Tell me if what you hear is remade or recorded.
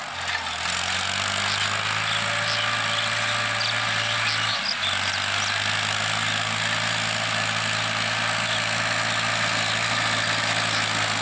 recorded